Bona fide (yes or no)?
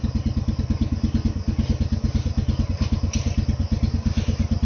yes